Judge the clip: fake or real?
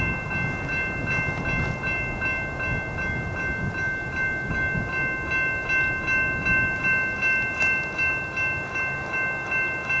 real